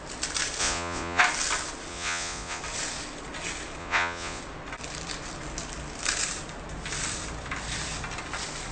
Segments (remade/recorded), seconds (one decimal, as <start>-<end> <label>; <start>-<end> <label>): 0.0-0.6 recorded; 0.6-1.2 remade; 1.2-1.9 recorded; 1.9-2.6 remade; 2.6-3.8 recorded; 3.8-4.4 remade; 4.4-8.7 recorded